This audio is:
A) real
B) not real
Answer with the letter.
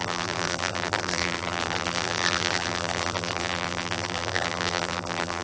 B